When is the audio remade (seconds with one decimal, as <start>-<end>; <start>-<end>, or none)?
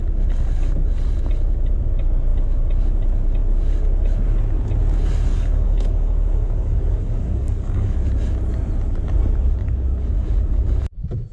5.3-8.0; 9.6-10.8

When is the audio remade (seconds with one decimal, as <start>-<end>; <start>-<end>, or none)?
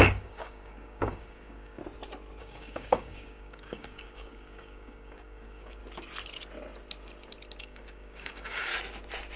0.0-1.8; 2.4-5.8; 7.6-8.7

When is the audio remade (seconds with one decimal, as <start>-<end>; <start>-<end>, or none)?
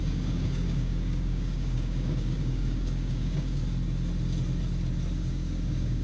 0.0-3.6; 5.2-6.0